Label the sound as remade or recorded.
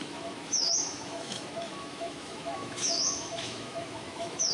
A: remade